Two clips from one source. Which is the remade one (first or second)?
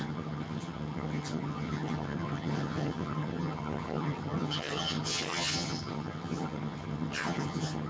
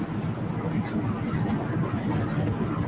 first